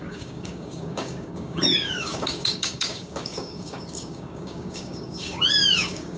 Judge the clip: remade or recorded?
remade